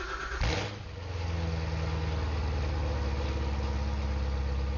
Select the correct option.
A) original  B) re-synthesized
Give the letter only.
A